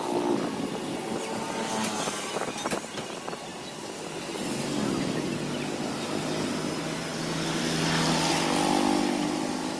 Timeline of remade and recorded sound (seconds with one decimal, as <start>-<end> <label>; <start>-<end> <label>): 0.0-9.8 recorded